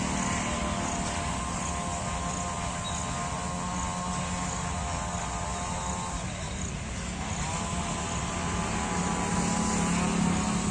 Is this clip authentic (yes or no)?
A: yes